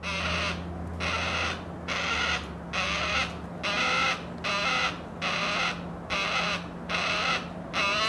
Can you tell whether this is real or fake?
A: real